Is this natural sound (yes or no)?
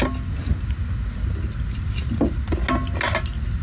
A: yes